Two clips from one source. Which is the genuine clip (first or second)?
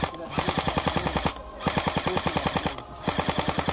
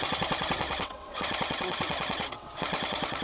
first